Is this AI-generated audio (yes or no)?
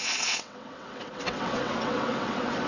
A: yes